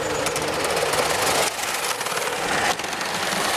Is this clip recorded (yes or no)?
yes